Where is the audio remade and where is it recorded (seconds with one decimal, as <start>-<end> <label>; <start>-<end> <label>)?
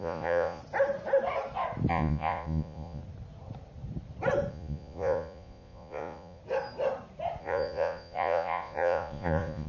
0.0-0.6 remade; 0.6-1.9 recorded; 1.9-3.0 remade; 3.0-4.5 recorded; 4.5-6.4 remade; 6.4-7.4 recorded; 7.4-9.7 remade